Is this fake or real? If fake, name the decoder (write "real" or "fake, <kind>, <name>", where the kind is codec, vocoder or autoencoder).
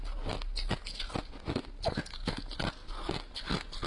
real